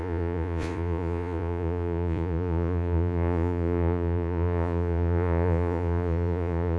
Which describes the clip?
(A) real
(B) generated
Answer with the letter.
B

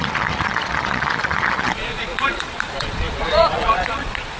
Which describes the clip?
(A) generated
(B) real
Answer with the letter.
A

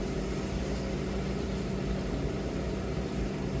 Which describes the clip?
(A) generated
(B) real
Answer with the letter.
B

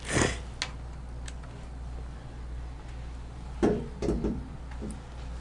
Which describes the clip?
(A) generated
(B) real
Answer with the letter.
B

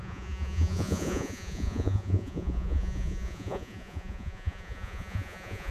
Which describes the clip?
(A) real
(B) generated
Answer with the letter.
B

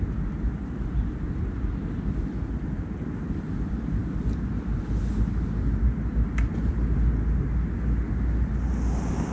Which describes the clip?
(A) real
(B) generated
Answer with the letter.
A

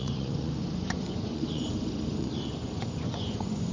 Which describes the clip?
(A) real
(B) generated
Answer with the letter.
B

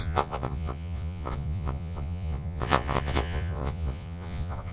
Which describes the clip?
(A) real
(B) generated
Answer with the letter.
B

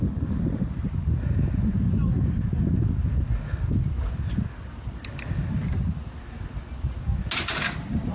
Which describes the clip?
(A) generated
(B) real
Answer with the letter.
B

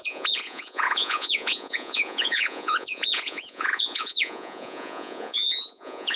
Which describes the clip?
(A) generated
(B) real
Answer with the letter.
A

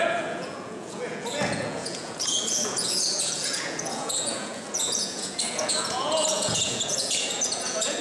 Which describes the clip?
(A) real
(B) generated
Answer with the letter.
B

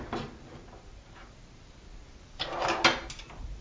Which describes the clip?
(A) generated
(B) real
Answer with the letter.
B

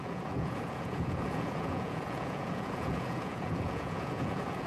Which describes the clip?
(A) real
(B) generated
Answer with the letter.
B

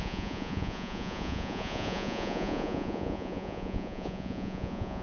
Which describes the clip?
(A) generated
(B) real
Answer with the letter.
A